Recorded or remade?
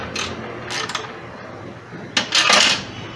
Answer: recorded